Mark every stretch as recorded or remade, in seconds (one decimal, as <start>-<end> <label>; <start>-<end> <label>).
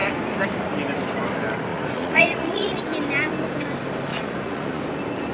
0.0-1.7 recorded; 1.7-2.8 remade; 2.8-4.1 recorded; 4.1-4.8 remade; 4.8-5.3 recorded